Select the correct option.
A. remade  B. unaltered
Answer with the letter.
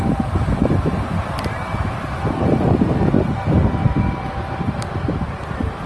B